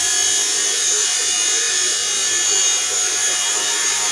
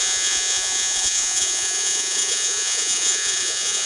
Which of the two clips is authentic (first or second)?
first